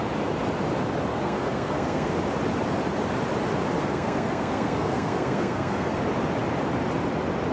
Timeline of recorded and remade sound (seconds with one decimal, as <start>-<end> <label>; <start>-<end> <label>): 0.0-1.1 recorded; 1.1-2.1 remade; 2.1-3.8 recorded; 3.8-6.0 remade; 6.0-7.5 recorded